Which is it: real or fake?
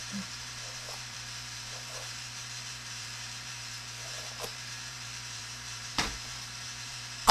fake